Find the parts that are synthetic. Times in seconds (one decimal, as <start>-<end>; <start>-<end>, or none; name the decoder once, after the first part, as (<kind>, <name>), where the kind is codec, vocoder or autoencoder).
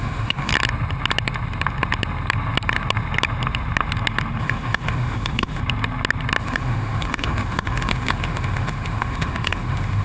0.0-0.5 (autoencoder, DAC-VAE); 4.4-5.6; 6.4-10.0